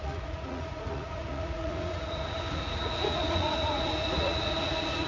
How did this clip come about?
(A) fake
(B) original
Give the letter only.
A